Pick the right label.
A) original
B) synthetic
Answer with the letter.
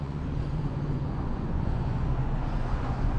B